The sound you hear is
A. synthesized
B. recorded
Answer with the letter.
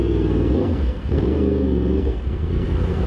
A